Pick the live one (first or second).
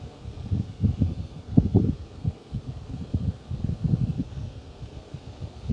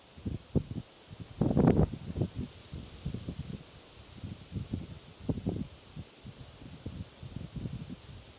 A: second